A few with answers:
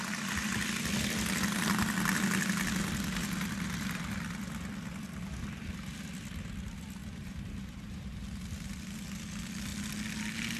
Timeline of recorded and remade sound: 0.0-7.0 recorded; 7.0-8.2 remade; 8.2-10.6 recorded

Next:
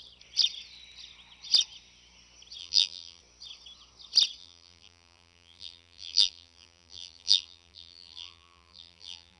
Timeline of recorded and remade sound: 0.0-2.6 recorded; 2.6-3.2 remade; 3.2-4.4 recorded; 4.4-9.4 remade

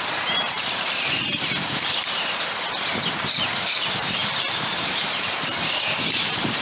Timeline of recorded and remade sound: 0.0-6.6 remade

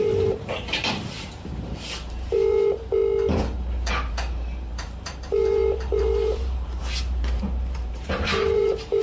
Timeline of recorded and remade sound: 0.0-3.0 remade; 3.0-3.9 recorded; 3.9-9.0 remade